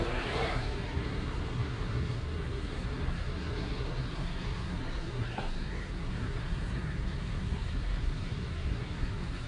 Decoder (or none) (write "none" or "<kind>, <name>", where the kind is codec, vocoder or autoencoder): codec, SNAC